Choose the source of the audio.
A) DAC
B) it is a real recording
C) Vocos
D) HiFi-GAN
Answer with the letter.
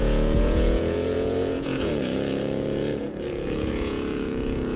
C